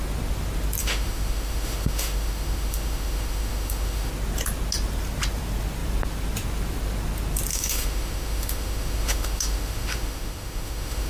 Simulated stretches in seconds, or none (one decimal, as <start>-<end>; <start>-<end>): 0.8-4.1; 7.5-11.1